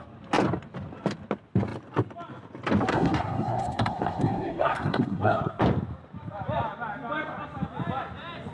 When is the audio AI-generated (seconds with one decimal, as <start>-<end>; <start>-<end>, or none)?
2.9-5.5